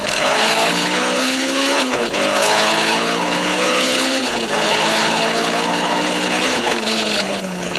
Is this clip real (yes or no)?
no